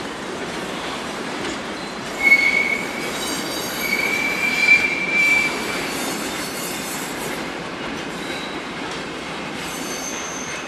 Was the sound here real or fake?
fake